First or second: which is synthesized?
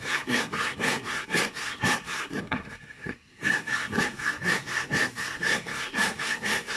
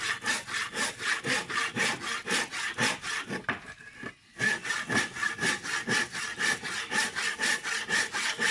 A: first